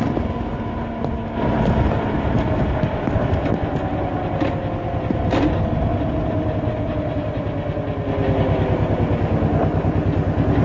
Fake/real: real